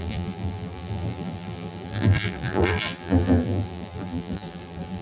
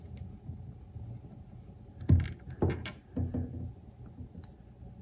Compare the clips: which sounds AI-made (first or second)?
first